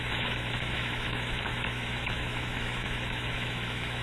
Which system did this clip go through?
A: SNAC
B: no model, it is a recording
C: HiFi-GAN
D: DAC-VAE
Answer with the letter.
D